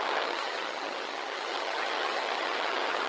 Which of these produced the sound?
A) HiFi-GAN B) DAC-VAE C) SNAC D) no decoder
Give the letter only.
A